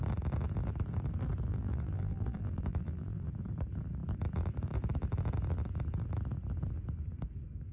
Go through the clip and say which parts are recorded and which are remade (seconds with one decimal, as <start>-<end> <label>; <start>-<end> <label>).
0.0-1.5 recorded; 1.5-3.3 remade; 3.3-7.7 recorded